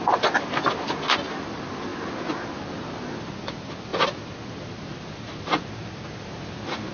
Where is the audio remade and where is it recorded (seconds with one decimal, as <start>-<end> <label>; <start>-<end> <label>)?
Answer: 0.0-6.9 recorded

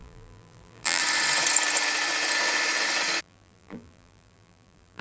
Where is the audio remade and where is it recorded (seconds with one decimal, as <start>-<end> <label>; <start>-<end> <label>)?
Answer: 0.0-1.0 remade; 1.0-3.2 recorded; 3.2-5.0 remade

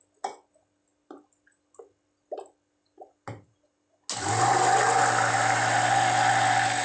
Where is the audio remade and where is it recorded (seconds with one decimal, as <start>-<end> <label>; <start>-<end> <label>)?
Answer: 0.0-6.8 recorded

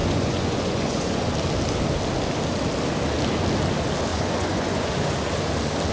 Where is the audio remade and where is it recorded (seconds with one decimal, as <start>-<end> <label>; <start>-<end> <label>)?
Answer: 0.0-1.3 remade; 1.3-4.1 recorded; 4.1-5.3 remade; 5.3-5.9 recorded

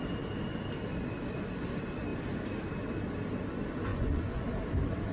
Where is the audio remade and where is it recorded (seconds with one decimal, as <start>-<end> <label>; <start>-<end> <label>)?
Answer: 0.0-3.9 recorded; 3.9-4.4 remade; 4.4-5.1 recorded

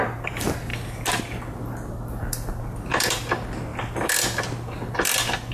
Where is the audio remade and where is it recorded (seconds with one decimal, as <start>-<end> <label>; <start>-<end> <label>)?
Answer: 0.0-5.5 recorded